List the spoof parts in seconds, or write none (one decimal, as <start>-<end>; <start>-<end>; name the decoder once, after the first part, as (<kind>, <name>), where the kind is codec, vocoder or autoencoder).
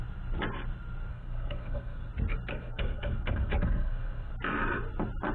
1.1-2.1 (codec, SNAC); 2.5-4.3